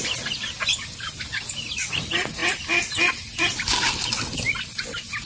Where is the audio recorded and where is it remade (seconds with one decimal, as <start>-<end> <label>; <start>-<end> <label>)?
0.0-5.3 recorded